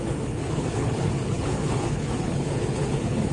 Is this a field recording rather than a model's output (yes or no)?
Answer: no